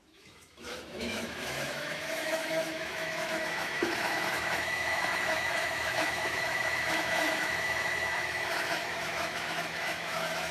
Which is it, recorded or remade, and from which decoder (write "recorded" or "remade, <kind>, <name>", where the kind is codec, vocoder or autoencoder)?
remade, autoencoder, DAC-VAE